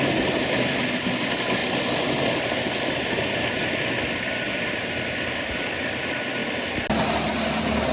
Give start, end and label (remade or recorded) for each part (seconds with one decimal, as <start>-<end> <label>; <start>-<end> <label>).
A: 0.0-7.9 recorded